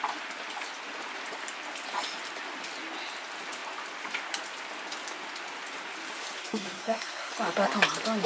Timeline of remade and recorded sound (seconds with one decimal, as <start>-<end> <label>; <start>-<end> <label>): 0.0-6.4 recorded; 6.4-7.3 remade; 7.3-8.3 recorded